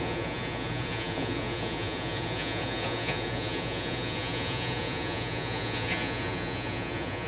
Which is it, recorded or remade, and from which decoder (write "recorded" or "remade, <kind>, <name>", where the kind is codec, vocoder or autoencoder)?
remade, vocoder, Vocos